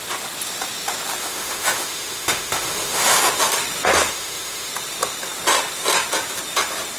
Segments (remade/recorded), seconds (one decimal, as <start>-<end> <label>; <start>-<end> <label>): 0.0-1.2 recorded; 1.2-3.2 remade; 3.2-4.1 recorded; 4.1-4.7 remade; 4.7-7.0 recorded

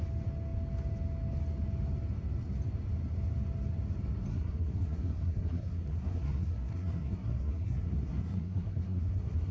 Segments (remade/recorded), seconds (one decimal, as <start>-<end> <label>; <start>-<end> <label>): 0.0-4.3 recorded; 4.3-9.5 remade

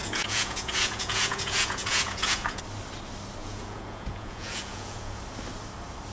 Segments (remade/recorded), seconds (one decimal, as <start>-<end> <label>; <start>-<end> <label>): 0.0-2.6 remade; 2.6-3.4 recorded; 3.4-5.2 remade; 5.2-6.1 recorded

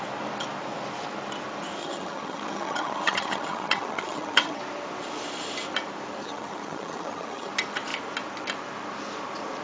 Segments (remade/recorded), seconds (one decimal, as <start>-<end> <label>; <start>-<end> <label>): 0.0-1.8 recorded; 1.8-4.6 remade; 4.6-6.2 recorded; 6.2-7.5 remade; 7.5-9.6 recorded

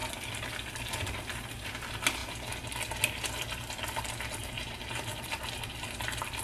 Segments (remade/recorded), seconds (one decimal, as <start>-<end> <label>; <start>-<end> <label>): 0.0-4.4 recorded; 4.4-5.4 remade; 5.4-6.4 recorded